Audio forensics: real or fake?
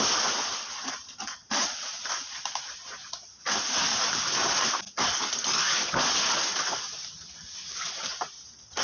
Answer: real